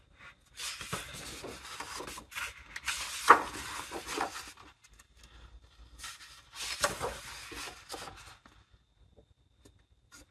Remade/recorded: recorded